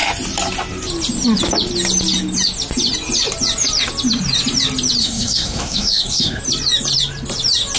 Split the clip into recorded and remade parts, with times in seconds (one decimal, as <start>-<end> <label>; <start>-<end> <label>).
0.0-5.0 recorded; 5.0-6.4 remade; 6.4-7.8 recorded

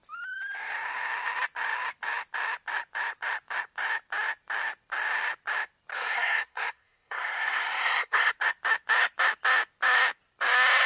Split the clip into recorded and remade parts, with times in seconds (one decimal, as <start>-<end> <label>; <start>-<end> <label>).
0.0-5.9 recorded; 5.9-8.3 remade; 8.3-10.9 recorded

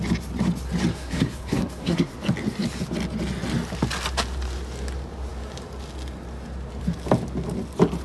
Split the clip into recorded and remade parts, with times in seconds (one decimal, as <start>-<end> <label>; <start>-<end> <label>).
0.0-0.9 recorded; 0.9-2.1 remade; 2.1-8.0 recorded

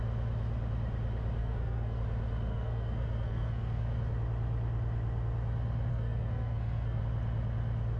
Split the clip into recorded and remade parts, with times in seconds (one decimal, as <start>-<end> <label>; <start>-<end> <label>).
0.0-1.4 recorded; 1.4-2.0 remade; 2.0-2.5 recorded; 2.5-3.9 remade; 3.9-5.9 recorded; 5.9-7.0 remade; 7.0-8.0 recorded

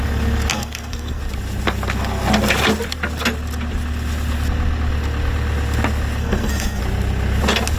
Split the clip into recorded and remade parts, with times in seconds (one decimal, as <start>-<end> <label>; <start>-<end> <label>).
0.0-0.5 recorded; 0.5-1.2 remade; 1.2-6.2 recorded; 6.2-6.8 remade; 6.8-7.8 recorded

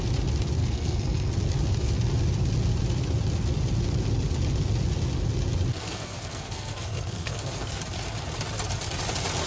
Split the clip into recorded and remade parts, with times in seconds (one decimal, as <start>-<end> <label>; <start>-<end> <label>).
0.0-0.6 recorded; 0.6-1.3 remade; 1.3-5.7 recorded; 5.7-7.8 remade; 7.8-9.5 recorded